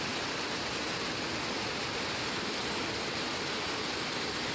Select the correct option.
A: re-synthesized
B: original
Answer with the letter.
B